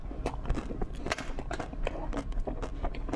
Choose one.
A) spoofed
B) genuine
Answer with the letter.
B